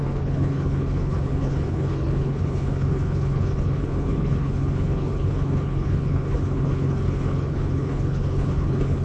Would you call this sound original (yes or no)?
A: no